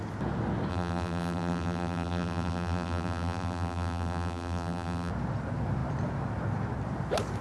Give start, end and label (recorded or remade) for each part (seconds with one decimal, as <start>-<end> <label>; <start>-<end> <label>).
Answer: 0.0-0.7 recorded; 0.7-5.1 remade; 5.1-7.4 recorded